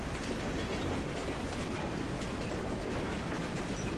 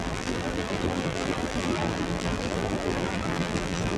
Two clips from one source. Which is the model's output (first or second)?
second